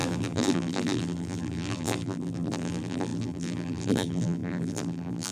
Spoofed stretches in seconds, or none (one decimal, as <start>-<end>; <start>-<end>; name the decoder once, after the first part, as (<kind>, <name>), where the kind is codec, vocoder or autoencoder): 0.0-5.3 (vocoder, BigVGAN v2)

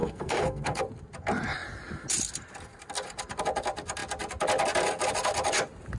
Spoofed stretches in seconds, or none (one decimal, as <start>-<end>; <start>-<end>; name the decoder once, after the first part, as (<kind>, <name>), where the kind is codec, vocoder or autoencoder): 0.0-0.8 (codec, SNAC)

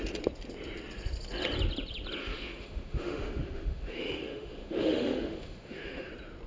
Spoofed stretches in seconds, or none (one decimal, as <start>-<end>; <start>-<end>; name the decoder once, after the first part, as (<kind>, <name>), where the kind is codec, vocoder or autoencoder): 2.2-6.1 (autoencoder, DAC-VAE)

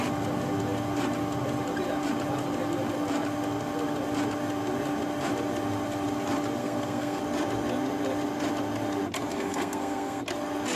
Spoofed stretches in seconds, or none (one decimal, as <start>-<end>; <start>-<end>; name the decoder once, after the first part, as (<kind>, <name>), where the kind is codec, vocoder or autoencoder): 6.6-7.2 (codec, SNAC); 9.3-10.2

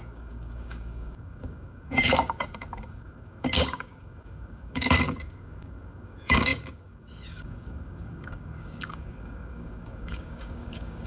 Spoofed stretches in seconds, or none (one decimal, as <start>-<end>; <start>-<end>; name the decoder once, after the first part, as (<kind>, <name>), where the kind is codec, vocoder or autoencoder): 0.0-11.1 (codec, DAC)

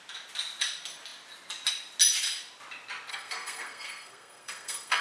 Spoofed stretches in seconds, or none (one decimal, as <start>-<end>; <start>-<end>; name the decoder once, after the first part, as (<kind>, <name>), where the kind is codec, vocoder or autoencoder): 3.1-5.0 (codec, SNAC)